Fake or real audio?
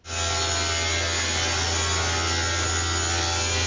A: real